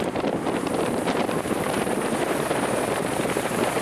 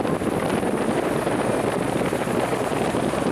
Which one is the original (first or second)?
second